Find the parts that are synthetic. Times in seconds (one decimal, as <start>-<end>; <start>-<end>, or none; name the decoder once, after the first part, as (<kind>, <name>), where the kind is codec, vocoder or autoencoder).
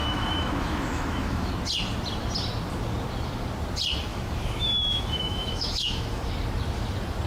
0.0-1.5 (autoencoder, DAC-VAE); 4.1-6.3